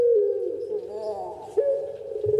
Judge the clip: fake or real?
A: real